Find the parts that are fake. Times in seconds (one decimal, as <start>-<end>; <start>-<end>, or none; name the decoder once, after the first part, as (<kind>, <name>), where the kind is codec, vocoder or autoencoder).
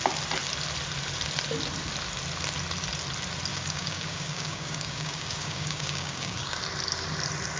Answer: 3.5-6.6 (codec, DAC)